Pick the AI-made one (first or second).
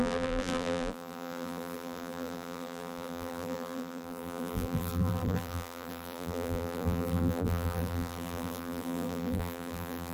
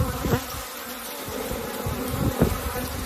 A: first